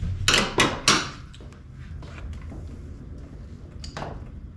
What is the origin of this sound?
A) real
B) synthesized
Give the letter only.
A